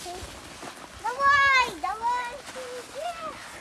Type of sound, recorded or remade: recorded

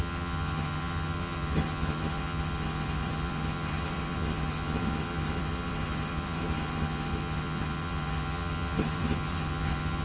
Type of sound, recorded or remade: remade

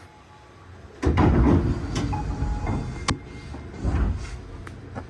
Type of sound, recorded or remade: recorded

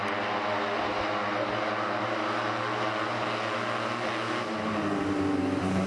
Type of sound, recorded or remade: recorded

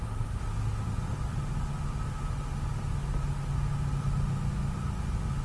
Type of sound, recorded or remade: recorded